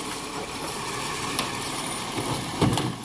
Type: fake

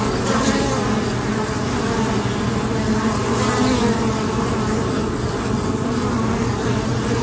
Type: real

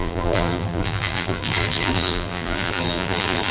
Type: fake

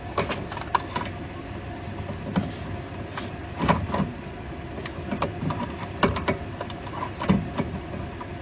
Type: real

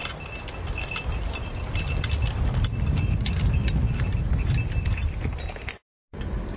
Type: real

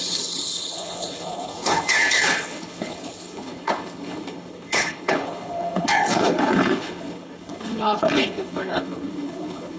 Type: fake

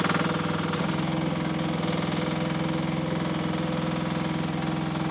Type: real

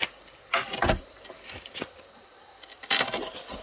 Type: real